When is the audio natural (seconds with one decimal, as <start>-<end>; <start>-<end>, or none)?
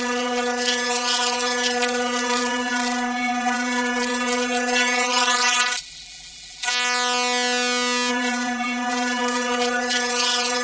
6.7-8.1